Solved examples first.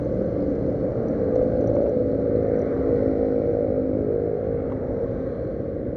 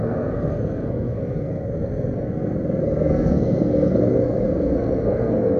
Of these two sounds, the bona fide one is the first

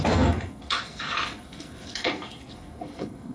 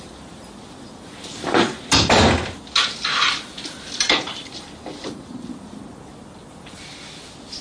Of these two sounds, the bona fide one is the second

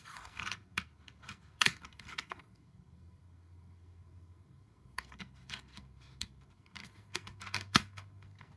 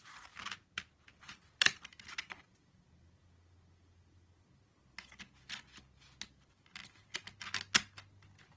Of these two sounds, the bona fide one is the second